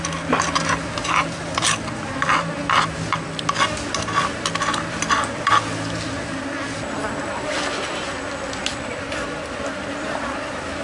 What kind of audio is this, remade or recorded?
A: recorded